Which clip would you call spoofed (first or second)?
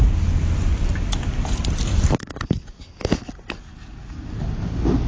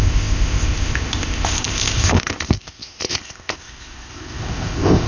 second